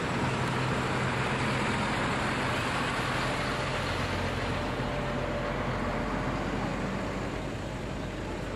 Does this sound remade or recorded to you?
recorded